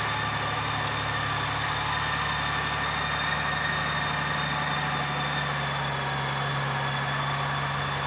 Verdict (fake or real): real